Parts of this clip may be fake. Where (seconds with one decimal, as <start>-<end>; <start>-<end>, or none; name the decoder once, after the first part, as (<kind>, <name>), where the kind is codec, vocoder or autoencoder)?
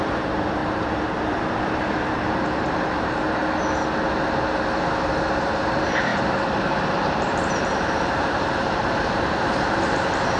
0.0-3.4 (vocoder, BigVGAN v2); 4.7-10.4